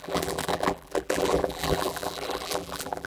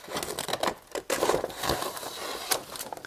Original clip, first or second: second